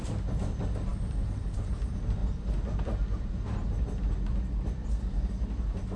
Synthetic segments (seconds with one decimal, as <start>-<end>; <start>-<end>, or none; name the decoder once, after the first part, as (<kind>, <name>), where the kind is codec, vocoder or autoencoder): none